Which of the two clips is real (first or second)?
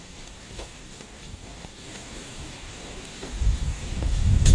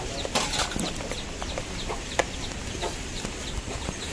second